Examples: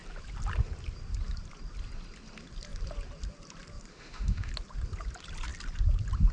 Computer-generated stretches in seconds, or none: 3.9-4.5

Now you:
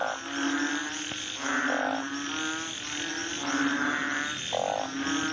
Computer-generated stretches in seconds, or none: none

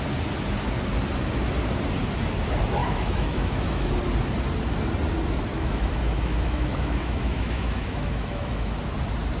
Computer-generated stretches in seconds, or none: 2.8-3.9; 5.5-8.8

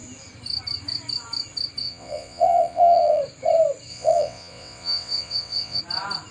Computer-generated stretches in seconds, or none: 1.8-3.2; 3.9-5.8

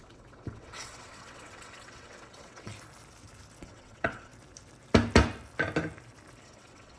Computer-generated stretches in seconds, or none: 0.0-2.7; 3.6-4.3; 6.4-7.0